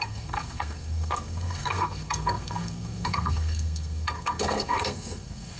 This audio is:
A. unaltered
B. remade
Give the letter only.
B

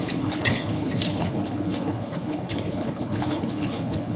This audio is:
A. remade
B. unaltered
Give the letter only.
A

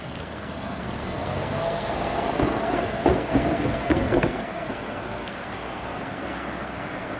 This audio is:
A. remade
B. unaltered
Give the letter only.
A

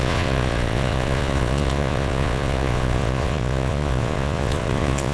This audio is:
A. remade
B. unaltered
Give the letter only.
A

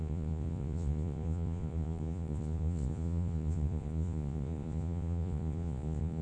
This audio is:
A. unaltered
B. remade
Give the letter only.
B